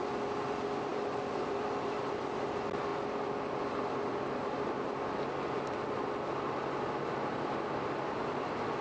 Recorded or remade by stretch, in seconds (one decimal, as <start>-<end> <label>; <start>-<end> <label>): 0.0-0.9 recorded; 0.9-2.5 remade; 2.5-8.8 recorded